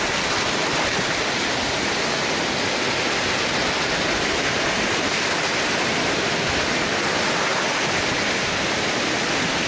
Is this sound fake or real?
real